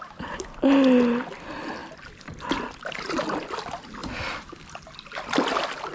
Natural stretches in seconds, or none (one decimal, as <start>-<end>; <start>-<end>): 0.0-5.9